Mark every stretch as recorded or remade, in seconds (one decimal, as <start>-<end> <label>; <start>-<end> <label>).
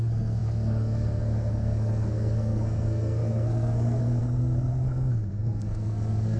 0.0-6.4 remade